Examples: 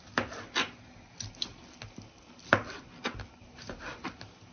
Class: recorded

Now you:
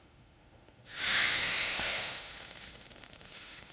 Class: remade